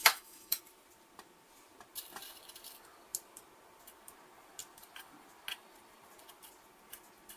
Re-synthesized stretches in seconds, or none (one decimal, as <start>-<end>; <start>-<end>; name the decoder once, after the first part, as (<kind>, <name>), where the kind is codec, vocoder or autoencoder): 0.0-0.6 (autoencoder, DAC-VAE)